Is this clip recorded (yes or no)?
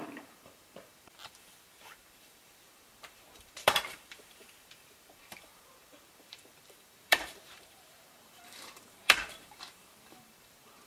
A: no